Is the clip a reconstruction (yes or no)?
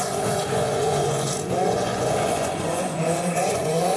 yes